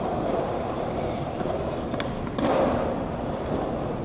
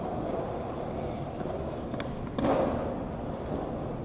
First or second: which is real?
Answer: second